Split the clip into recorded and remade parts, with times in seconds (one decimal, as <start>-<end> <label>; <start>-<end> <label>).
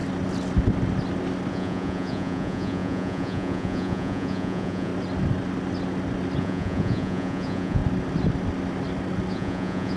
0.0-1.5 recorded; 1.5-4.9 remade; 4.9-6.4 recorded; 6.4-7.8 remade; 7.8-9.3 recorded; 9.3-10.0 remade